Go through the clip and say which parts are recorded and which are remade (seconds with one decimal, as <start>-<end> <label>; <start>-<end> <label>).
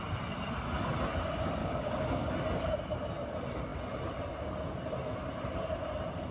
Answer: 0.0-1.6 recorded; 1.6-2.3 remade; 2.3-6.3 recorded